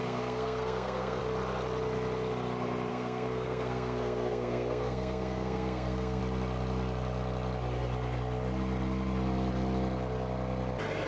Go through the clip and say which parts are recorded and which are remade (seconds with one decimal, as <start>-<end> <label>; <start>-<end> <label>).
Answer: 0.0-1.2 remade; 1.2-2.9 recorded; 2.9-6.2 remade; 6.2-11.1 recorded